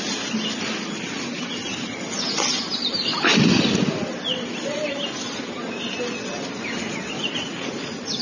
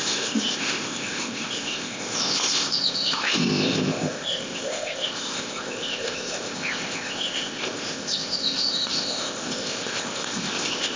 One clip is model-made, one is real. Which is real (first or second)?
first